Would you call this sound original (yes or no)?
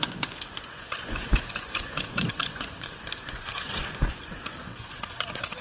no